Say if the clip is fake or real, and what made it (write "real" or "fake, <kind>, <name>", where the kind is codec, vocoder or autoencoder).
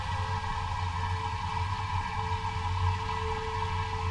real